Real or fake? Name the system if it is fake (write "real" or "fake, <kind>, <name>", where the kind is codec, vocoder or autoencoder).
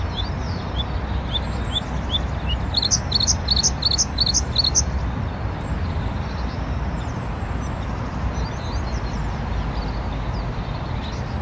real